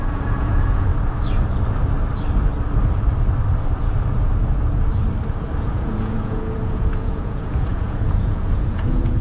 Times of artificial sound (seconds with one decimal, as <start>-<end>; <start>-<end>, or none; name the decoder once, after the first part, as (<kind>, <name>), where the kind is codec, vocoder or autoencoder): 0.0-0.9 (vocoder, Vocos); 5.6-9.2